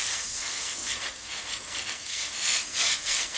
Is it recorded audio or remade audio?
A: remade